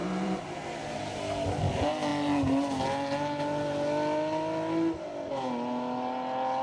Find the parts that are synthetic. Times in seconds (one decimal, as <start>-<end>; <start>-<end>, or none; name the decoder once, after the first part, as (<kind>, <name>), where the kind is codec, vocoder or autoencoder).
0.0-1.2 (vocoder, BigVGAN v2)